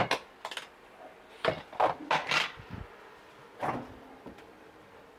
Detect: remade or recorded recorded